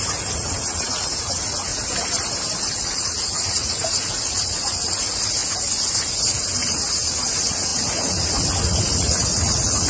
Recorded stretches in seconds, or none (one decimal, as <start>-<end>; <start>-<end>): 1.7-2.8; 5.4-6.7